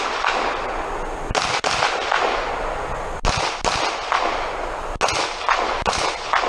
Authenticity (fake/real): real